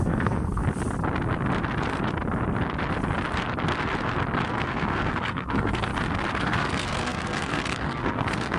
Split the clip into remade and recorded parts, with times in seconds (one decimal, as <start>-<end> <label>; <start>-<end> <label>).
0.0-0.6 remade; 0.6-4.5 recorded; 4.5-5.9 remade; 5.9-6.4 recorded; 6.4-8.6 remade